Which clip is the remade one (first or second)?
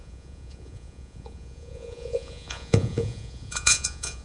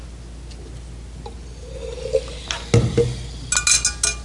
first